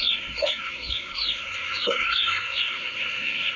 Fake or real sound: fake